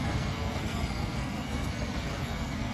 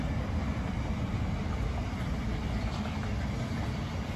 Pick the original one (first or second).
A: second